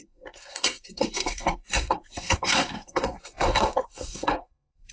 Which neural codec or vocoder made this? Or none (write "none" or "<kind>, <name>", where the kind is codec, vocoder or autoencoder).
codec, SNAC